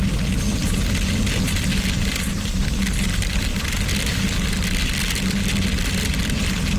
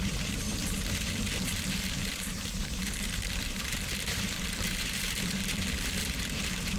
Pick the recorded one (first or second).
first